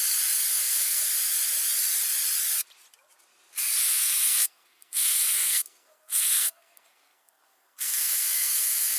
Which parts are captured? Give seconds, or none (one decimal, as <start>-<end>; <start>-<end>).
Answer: 0.0-0.5; 1.1-3.8